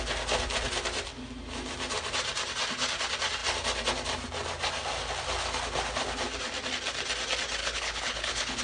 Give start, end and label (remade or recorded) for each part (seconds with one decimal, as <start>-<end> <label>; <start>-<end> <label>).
0.0-7.6 recorded; 7.6-8.6 remade